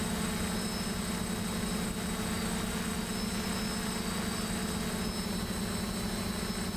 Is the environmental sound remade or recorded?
recorded